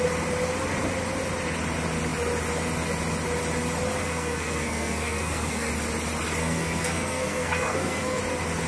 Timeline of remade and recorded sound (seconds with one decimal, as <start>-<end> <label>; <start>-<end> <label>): 0.0-4.0 recorded; 4.0-5.7 remade; 5.7-6.4 recorded; 6.4-8.2 remade; 8.2-8.7 recorded